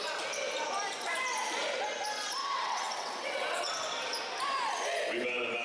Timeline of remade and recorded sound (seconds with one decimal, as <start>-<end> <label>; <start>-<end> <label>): 0.0-2.4 recorded; 2.4-3.7 remade; 3.7-5.6 recorded